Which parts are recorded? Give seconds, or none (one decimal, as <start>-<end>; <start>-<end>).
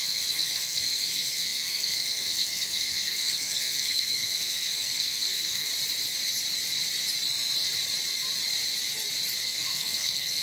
5.7-9.4